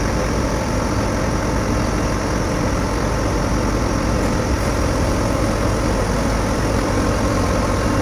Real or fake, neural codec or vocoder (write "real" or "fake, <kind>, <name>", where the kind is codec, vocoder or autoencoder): fake, vocoder, BigVGAN v2